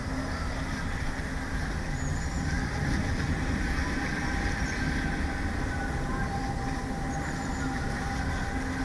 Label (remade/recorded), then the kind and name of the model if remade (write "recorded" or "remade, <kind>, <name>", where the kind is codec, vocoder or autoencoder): recorded